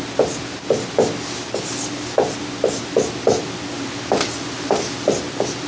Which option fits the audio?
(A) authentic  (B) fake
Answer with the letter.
A